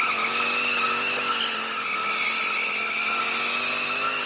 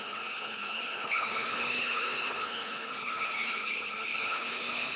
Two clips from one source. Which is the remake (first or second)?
second